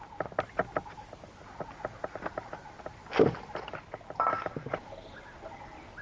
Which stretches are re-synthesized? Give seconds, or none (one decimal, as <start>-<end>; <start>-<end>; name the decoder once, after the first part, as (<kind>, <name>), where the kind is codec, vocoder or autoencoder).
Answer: none